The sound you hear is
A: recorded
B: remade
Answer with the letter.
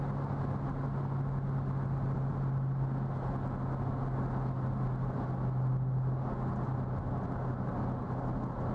A